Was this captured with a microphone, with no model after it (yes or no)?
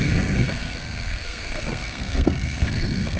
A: no